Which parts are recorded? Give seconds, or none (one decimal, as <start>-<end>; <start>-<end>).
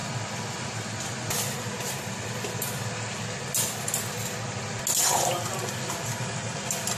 0.0-5.1; 6.6-7.0